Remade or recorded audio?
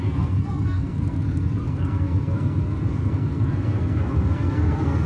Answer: remade